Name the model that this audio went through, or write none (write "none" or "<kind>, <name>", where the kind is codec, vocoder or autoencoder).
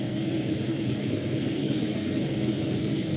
codec, SNAC